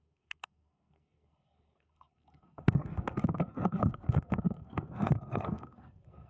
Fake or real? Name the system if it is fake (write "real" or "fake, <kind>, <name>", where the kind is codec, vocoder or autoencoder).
fake, codec, SNAC